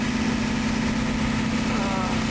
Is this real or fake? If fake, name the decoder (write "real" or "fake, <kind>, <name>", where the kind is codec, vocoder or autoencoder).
real